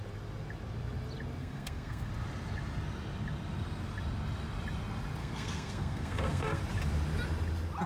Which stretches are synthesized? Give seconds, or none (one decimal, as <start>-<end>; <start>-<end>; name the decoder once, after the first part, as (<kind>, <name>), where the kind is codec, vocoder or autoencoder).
1.4-2.1 (codec, SNAC); 5.2-6.6